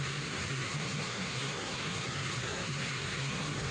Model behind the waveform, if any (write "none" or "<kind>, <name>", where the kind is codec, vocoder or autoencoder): codec, SNAC